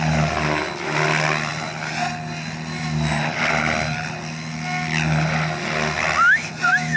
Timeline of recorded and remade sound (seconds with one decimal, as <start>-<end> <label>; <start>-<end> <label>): 0.0-7.0 recorded